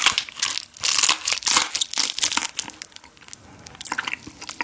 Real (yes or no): yes